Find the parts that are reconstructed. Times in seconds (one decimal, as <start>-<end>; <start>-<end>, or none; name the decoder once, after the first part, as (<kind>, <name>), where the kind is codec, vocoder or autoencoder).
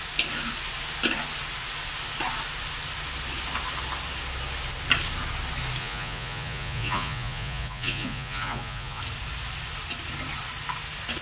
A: 5.8-9.0 (vocoder, Vocos)